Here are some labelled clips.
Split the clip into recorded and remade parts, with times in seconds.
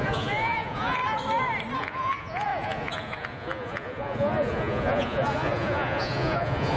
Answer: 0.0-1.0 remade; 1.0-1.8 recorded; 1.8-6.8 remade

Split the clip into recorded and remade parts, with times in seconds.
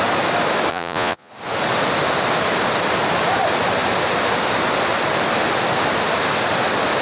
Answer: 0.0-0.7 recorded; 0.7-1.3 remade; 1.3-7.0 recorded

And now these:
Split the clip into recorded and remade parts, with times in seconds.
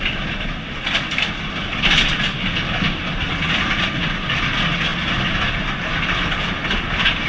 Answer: 0.0-7.3 recorded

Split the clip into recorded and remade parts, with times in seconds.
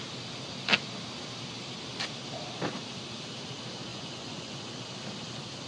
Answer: 0.0-3.9 recorded; 3.9-4.7 remade; 4.7-5.7 recorded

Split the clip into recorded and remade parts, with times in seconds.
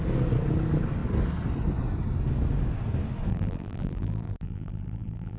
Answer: 0.0-3.3 recorded; 3.3-5.4 remade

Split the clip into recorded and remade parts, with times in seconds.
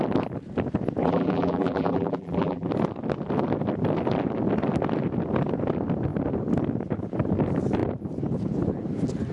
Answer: 0.0-1.0 recorded; 1.0-2.7 remade; 2.7-9.3 recorded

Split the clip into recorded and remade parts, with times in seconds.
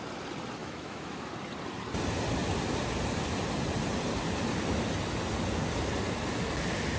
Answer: 0.0-0.6 recorded; 0.6-1.3 remade; 1.3-7.0 recorded